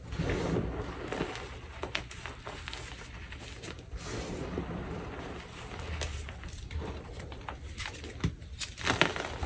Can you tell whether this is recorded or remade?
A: recorded